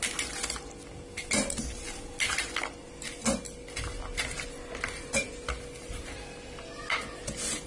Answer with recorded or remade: recorded